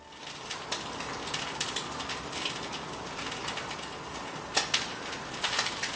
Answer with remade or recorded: recorded